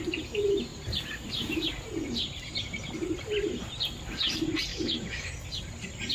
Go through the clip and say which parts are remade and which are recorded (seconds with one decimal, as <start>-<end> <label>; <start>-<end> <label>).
0.0-4.7 recorded; 4.7-5.3 remade; 5.3-6.1 recorded